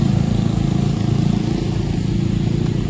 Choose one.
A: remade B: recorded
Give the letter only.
B